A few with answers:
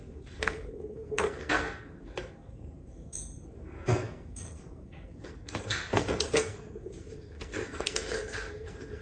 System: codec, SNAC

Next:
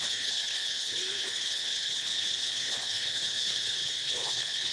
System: codec, HILCodec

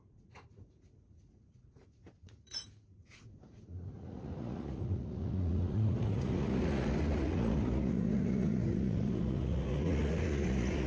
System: vocoder, Vocos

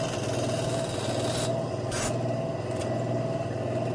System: none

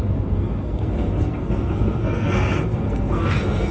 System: codec, SNAC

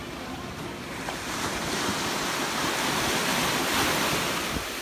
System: none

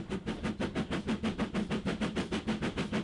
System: none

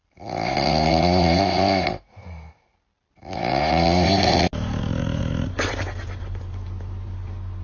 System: none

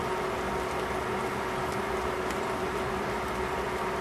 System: none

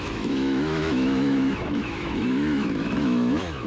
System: autoencoder, DAC-VAE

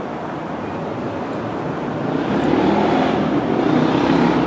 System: none